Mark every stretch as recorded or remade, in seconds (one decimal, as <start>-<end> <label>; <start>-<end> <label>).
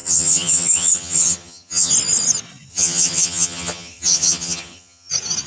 0.0-1.9 remade; 1.9-2.7 recorded; 2.7-5.1 remade; 5.1-5.5 recorded